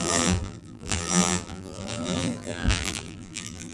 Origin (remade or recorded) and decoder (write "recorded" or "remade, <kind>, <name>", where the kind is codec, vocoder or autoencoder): remade, vocoder, BigVGAN v2